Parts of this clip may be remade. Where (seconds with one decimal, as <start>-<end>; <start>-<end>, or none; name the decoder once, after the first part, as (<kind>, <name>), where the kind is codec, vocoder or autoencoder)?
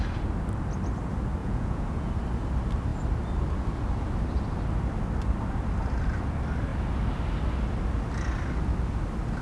1.4-2.1 (vocoder, Vocos)